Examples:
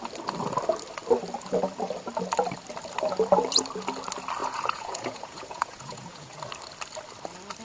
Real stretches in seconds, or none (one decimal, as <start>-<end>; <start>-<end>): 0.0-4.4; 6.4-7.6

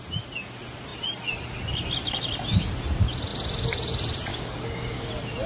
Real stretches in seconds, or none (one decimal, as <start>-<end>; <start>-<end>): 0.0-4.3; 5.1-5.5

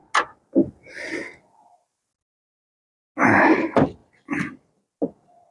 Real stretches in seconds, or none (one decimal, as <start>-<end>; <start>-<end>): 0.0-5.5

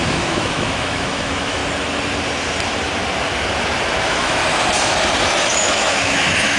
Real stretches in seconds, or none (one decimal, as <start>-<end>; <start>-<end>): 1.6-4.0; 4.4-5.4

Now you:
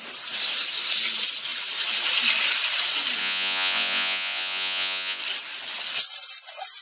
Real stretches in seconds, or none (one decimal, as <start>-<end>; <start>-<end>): 0.0-3.2; 5.2-6.8

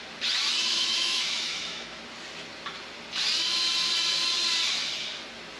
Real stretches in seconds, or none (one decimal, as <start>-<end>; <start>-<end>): 0.0-0.5; 2.0-5.6